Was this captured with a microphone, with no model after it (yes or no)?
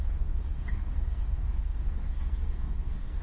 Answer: no